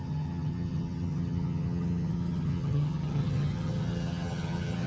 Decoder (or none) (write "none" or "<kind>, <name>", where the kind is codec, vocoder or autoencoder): vocoder, HiFi-GAN